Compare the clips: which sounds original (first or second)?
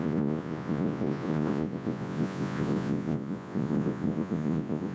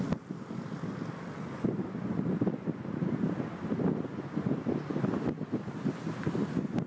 second